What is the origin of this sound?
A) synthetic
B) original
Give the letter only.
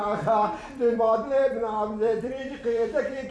A